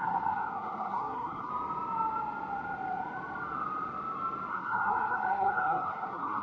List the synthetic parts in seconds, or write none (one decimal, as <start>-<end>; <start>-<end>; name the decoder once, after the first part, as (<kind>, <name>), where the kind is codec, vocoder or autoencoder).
0.0-1.5 (codec, SNAC); 4.5-6.4